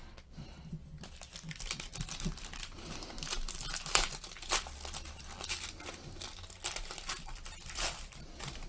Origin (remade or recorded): recorded